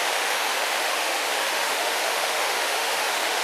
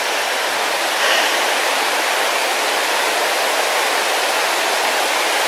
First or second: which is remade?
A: first